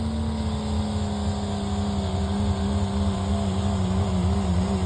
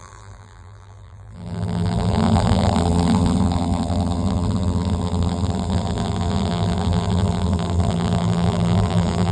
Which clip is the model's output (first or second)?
second